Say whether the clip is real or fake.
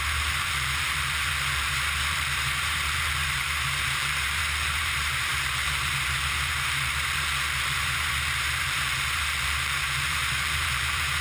fake